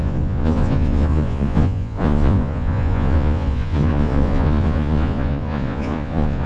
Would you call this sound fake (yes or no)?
yes